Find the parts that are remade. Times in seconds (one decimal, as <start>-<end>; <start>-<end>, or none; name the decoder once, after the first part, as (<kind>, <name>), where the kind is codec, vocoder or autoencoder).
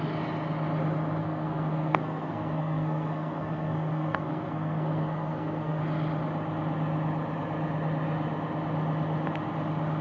1.2-5.8 (codec, SNAC)